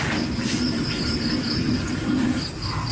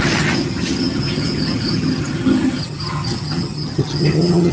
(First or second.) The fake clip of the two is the second